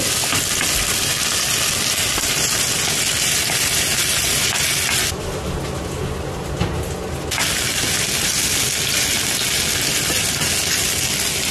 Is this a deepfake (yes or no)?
no